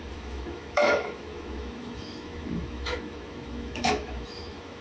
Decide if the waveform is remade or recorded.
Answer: remade